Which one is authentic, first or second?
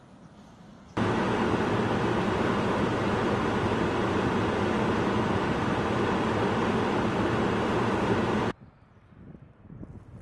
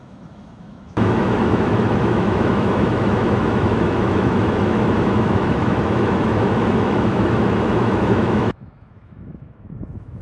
first